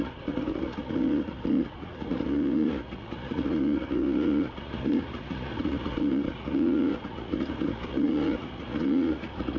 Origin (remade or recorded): remade